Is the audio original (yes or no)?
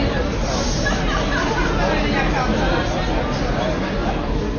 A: yes